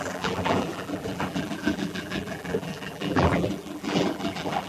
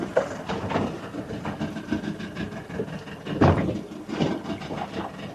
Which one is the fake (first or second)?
first